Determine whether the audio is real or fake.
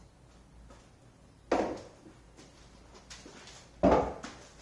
real